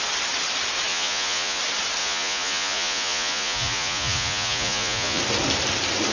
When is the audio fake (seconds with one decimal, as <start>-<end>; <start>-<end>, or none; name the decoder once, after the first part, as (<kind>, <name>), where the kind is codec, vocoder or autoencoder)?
0.9-1.6 (vocoder, Vocos); 2.0-5.2